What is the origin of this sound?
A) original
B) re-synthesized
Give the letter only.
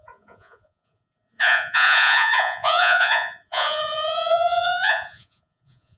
B